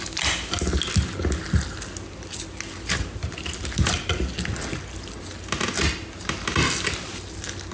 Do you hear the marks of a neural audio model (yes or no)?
no